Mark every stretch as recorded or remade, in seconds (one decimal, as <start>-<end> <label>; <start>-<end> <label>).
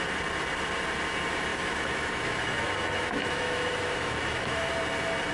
0.0-1.5 recorded; 1.5-4.7 remade; 4.7-5.3 recorded